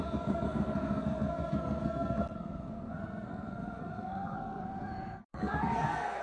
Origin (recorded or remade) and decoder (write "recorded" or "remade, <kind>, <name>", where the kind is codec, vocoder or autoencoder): remade, codec, SNAC